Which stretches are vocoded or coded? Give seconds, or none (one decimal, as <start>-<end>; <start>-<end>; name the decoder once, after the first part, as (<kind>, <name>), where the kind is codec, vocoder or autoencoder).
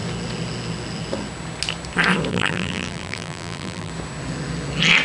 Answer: 2.3-3.9 (vocoder, BigVGAN v2)